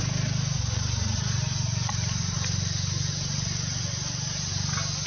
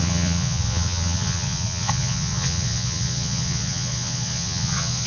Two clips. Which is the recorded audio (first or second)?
first